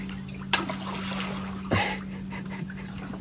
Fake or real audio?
real